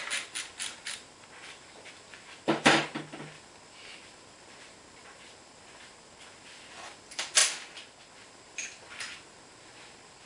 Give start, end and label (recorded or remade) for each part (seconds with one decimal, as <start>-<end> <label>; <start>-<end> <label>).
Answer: 0.0-10.3 recorded